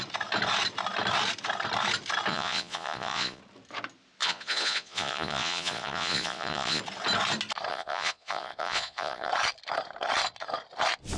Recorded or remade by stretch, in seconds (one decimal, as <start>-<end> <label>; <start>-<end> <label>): 0.0-2.3 recorded; 2.3-3.4 remade; 3.4-4.2 recorded; 4.2-6.8 remade; 6.8-7.7 recorded; 7.7-9.3 remade; 9.3-11.2 recorded